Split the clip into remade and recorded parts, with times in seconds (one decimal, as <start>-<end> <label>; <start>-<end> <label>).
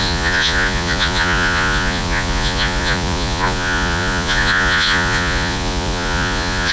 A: 0.0-6.7 remade